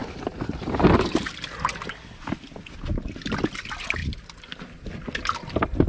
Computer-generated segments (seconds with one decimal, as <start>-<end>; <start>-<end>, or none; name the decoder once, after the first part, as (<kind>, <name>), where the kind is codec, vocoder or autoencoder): none